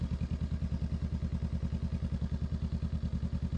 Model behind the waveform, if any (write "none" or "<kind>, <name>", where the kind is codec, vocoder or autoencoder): none